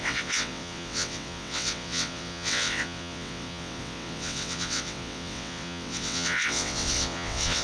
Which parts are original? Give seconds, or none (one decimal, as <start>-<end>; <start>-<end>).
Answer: none